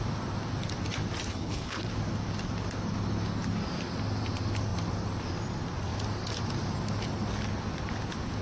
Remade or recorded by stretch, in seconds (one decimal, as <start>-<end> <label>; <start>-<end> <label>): 0.0-1.3 recorded; 1.3-1.9 remade; 1.9-8.4 recorded